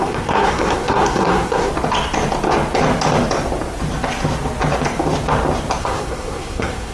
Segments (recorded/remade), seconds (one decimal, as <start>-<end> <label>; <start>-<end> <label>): 0.0-1.7 remade; 1.7-5.8 recorded; 5.8-6.9 remade